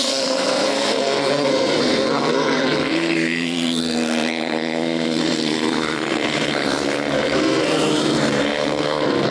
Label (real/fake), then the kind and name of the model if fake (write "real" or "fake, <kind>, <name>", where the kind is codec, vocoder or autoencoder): fake, codec, SNAC